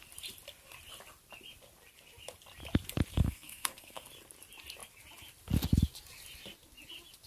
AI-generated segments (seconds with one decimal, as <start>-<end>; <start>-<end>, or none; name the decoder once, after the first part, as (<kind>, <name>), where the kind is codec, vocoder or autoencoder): 3.1-4.1 (codec, SNAC)

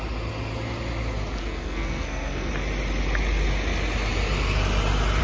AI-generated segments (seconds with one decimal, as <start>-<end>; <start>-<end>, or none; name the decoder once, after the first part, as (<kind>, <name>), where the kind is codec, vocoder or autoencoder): 1.4-2.5 (codec, SNAC)

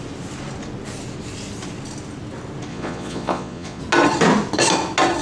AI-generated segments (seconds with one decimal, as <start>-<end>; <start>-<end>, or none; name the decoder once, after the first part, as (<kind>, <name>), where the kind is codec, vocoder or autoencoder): 2.7-3.8 (vocoder, Vocos)

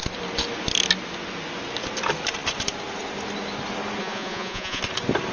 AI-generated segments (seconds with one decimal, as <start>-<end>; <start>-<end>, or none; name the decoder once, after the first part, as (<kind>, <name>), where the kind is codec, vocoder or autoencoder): 4.0-4.8 (vocoder, Vocos)

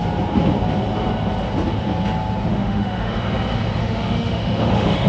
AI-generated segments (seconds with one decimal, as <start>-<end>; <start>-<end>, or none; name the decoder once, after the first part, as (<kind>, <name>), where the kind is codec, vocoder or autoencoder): 2.5-3.2 (autoencoder, DAC-VAE); 3.8-5.1